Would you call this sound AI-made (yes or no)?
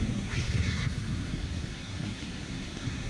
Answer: yes